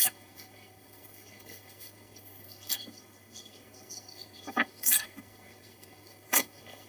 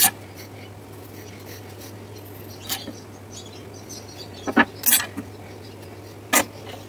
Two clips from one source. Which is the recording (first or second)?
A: second